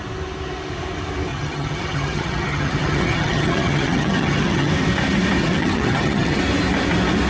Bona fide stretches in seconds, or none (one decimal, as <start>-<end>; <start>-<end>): 0.0-1.3; 4.7-5.4; 6.4-7.3